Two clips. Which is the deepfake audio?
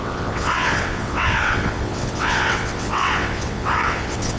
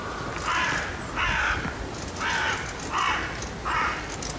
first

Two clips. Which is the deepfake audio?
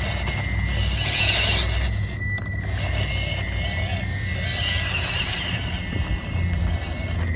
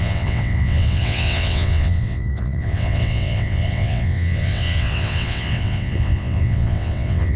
second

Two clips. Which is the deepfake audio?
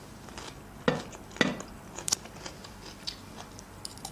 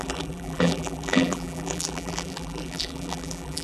second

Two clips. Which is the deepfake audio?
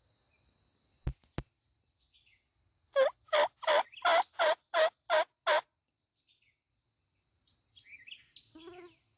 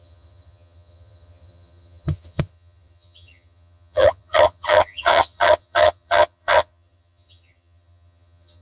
second